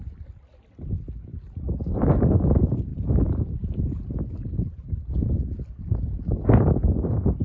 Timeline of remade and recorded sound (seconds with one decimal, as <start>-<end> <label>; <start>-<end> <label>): 0.0-7.4 recorded